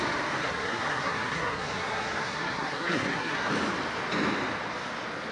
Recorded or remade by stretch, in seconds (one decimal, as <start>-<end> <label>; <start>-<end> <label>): 0.0-0.4 recorded; 0.4-3.5 remade; 3.5-5.3 recorded